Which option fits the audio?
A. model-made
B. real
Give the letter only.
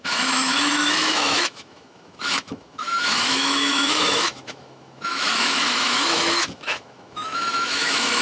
A